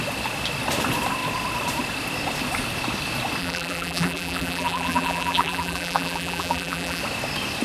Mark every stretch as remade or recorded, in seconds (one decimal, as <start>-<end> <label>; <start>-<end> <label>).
0.0-3.4 recorded; 3.4-7.0 remade; 7.0-7.6 recorded